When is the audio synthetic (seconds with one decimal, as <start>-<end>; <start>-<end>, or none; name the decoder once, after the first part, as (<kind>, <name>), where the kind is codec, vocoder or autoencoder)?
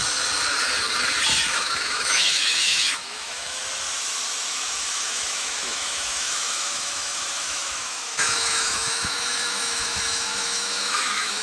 1.5-3.6 (autoencoder, DAC-VAE); 4.5-11.4